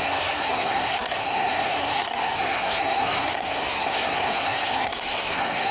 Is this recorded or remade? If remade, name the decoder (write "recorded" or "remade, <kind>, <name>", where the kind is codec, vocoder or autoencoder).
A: remade, codec, SNAC